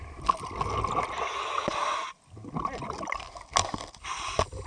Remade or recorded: recorded